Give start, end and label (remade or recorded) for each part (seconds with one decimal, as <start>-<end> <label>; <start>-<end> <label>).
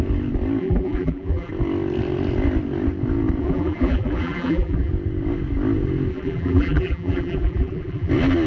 0.0-0.6 recorded; 0.6-1.5 remade; 1.5-3.4 recorded; 3.4-4.9 remade; 4.9-6.1 recorded; 6.1-8.1 remade; 8.1-8.5 recorded